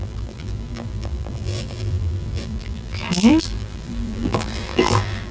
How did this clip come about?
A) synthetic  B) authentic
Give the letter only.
A